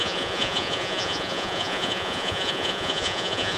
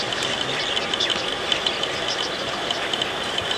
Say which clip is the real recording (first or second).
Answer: second